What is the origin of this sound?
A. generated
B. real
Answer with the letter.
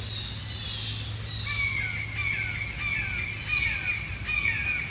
B